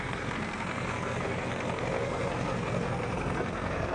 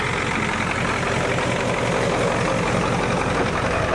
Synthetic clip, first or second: first